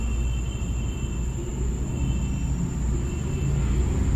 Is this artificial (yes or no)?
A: no